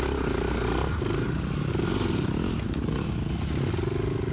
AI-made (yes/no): no